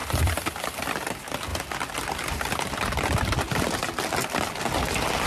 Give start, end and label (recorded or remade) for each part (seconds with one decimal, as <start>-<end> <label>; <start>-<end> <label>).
0.0-0.5 remade; 0.5-1.5 recorded; 1.5-3.4 remade; 3.4-5.3 recorded